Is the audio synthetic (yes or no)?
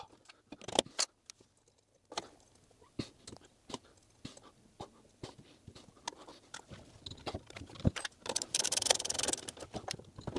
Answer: no